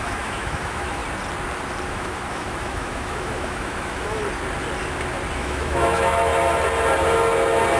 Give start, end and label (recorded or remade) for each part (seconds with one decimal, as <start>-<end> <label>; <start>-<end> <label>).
0.0-1.0 remade; 1.0-1.9 recorded; 1.9-4.2 remade; 4.2-5.4 recorded; 5.4-6.3 remade; 6.3-7.8 recorded